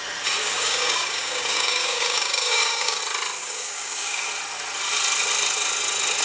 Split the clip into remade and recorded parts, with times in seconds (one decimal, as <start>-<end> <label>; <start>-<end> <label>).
0.0-0.4 recorded; 0.4-3.0 remade; 3.0-3.4 recorded; 3.4-4.3 remade; 4.3-6.2 recorded

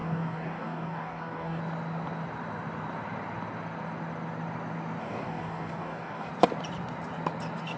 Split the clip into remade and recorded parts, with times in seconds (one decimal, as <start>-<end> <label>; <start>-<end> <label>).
0.0-1.6 remade; 1.6-5.0 recorded; 5.0-6.3 remade; 6.3-7.8 recorded

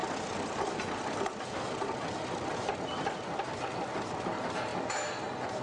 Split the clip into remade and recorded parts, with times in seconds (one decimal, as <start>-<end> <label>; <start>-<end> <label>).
0.0-5.6 recorded